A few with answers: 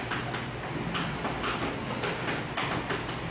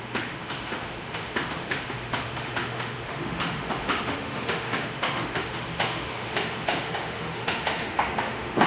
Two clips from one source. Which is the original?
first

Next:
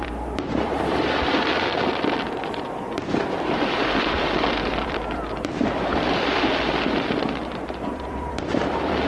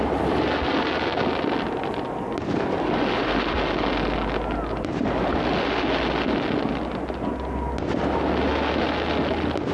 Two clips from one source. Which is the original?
second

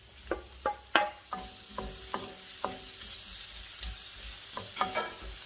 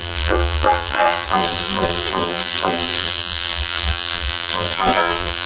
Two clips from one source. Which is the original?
first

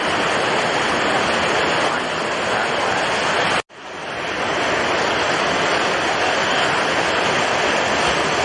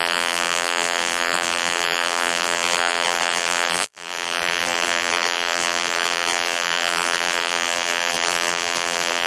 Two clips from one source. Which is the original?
first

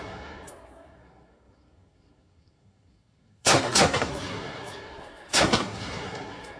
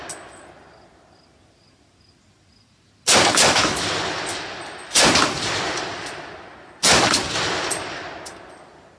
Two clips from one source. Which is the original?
second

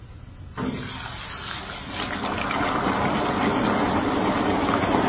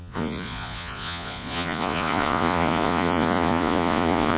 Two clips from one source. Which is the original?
first